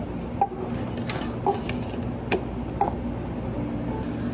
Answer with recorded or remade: recorded